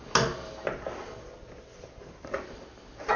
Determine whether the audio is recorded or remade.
recorded